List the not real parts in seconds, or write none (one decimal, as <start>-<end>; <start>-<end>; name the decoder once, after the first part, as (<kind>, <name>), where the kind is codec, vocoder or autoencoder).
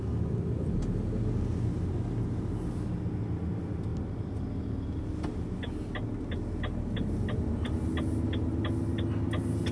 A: none